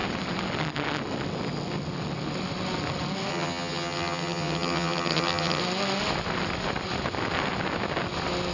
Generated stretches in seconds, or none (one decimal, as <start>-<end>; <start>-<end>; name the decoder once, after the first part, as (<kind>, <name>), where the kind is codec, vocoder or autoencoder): 3.3-5.6 (vocoder, HiFi-GAN)